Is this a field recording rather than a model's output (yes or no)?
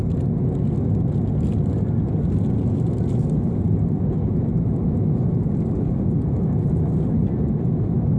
yes